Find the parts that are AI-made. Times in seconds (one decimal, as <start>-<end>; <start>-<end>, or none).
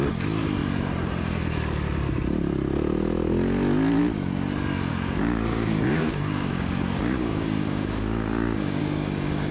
4.9-8.8